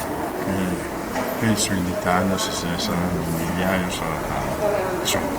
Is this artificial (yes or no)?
no